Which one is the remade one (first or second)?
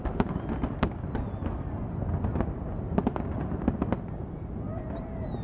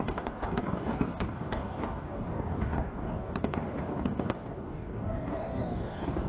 second